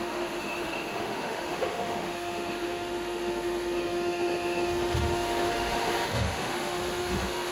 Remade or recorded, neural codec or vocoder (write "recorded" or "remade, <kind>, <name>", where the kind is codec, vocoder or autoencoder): remade, autoencoder, DAC-VAE